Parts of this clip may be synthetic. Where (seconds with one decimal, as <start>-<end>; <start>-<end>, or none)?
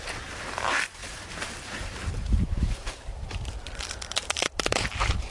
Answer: 0.0-5.3